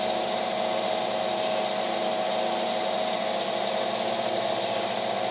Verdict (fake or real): real